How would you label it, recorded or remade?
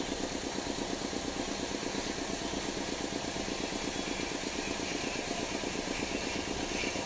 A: recorded